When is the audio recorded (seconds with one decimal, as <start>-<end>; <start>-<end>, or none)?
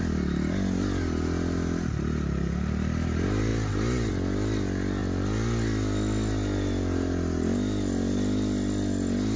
0.0-9.4